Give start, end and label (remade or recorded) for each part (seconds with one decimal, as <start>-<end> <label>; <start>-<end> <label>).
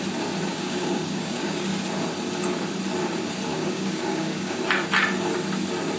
0.0-0.5 recorded; 0.5-1.7 remade; 1.7-3.5 recorded; 3.5-4.6 remade; 4.6-6.0 recorded